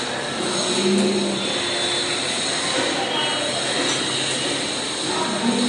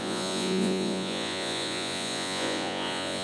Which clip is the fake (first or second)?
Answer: second